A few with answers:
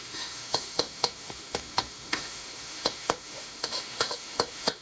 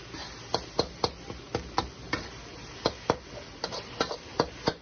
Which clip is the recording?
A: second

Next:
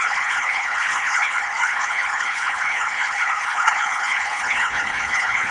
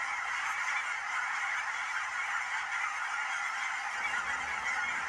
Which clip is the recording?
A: second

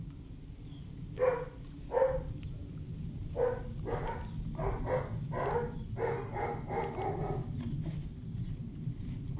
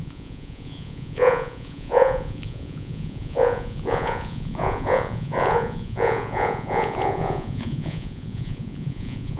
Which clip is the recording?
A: first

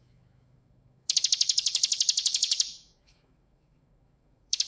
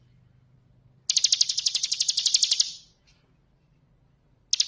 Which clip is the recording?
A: second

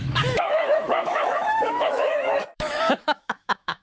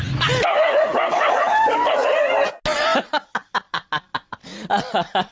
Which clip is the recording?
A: second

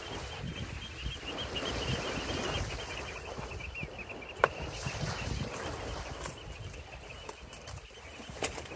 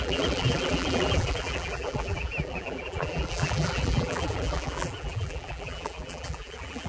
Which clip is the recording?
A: first